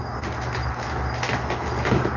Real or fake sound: real